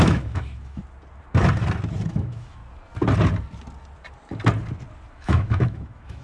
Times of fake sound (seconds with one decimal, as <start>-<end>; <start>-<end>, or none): 0.0-0.8; 2.1-2.6; 5.1-6.2